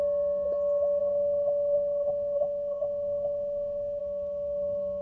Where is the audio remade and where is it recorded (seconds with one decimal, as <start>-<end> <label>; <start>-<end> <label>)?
0.0-1.0 recorded; 1.0-4.0 remade; 4.0-5.0 recorded

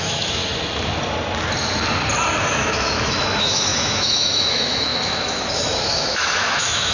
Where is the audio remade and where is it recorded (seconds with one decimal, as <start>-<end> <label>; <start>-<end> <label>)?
0.0-0.4 remade; 0.4-2.4 recorded; 2.4-6.9 remade

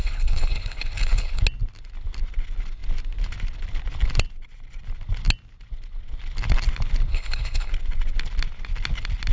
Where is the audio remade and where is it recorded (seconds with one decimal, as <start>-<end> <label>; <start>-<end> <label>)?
0.0-1.4 remade; 1.4-7.1 recorded; 7.1-7.7 remade; 7.7-9.3 recorded